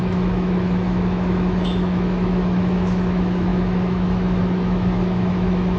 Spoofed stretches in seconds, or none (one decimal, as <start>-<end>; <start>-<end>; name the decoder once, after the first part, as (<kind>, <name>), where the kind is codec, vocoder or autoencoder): 0.0-5.8 (autoencoder, DAC-VAE)